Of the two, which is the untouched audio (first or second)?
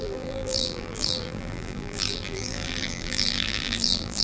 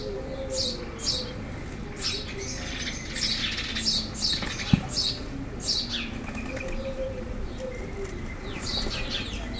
second